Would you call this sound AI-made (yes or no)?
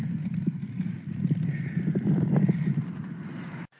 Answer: yes